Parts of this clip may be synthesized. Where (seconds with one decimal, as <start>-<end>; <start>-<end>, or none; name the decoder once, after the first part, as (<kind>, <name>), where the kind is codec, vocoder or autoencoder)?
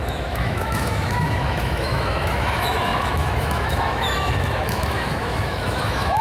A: 0.0-6.2 (autoencoder, DAC-VAE)